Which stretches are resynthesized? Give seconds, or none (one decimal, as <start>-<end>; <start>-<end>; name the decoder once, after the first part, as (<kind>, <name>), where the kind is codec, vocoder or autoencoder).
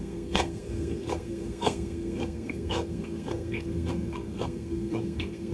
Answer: 0.0-5.5 (codec, SNAC)